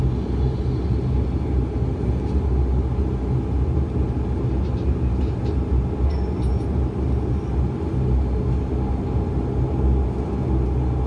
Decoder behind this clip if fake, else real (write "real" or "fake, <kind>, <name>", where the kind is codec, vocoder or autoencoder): real